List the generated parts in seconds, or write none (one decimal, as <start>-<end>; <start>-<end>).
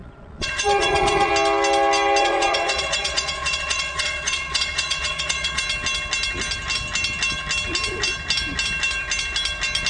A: 0.0-1.3; 2.2-5.6